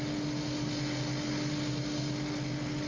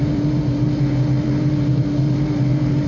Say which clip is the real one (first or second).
first